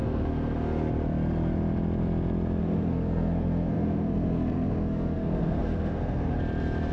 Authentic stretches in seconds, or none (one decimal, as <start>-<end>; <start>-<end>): 0.9-2.6; 6.4-6.9